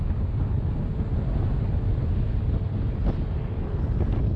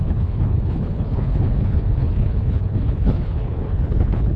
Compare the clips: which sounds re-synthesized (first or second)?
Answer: second